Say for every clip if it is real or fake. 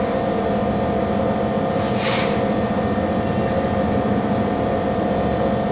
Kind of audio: real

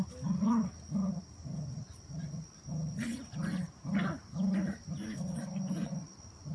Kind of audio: real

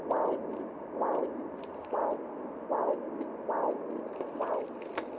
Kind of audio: real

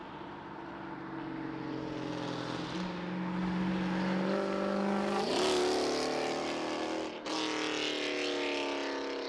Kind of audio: real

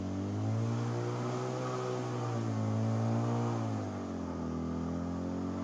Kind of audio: real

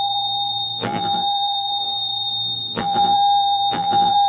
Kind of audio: fake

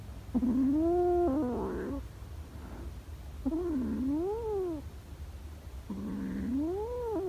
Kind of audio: real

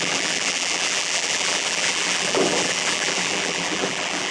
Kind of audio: fake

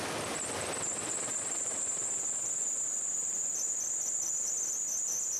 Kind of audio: fake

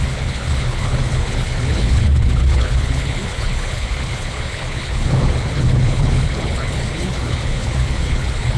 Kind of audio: fake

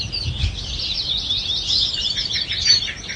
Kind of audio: fake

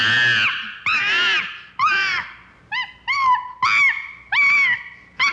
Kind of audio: real